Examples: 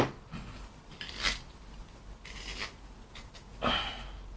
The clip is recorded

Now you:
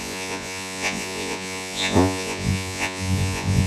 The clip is remade